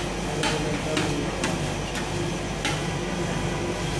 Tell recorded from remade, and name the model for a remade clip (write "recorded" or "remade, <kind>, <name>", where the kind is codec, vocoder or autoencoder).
recorded